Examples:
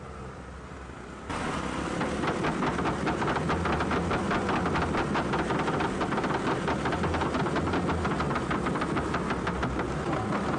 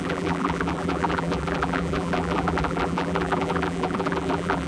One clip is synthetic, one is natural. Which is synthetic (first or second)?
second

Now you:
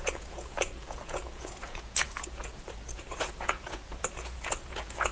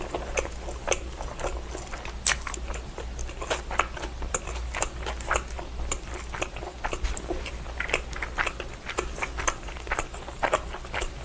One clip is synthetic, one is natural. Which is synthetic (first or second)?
first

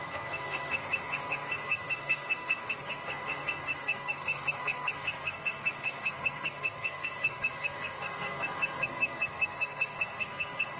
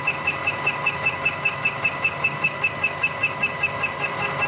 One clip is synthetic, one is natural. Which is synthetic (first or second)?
first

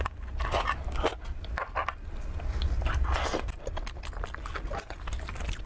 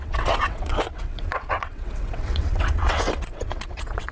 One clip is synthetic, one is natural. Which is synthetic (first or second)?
second